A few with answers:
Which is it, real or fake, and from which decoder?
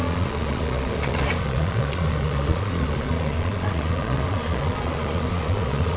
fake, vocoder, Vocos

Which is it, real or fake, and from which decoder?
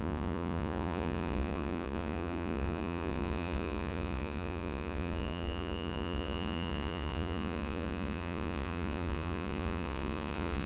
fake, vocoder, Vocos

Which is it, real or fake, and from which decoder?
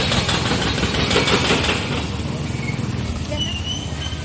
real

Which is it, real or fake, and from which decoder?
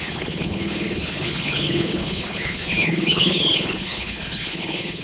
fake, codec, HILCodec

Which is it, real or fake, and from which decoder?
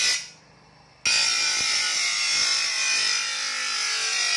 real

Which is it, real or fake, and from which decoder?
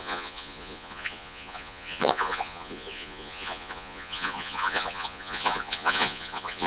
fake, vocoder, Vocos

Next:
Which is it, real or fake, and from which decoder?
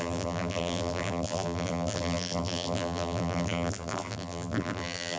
fake, vocoder, BigVGAN v2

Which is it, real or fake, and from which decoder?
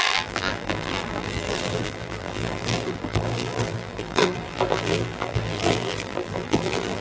fake, vocoder, BigVGAN v2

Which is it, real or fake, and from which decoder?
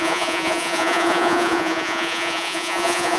fake, vocoder, Vocos